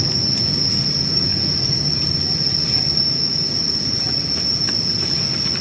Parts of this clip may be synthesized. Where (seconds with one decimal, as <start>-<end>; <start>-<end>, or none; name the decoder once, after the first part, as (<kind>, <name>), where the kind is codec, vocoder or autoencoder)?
3.0-3.5 (autoencoder, DAC-VAE)